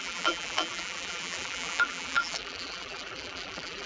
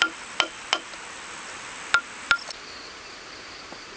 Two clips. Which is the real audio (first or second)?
second